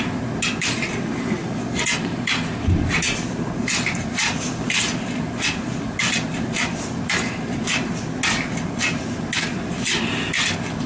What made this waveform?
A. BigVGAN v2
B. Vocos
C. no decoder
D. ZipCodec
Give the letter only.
C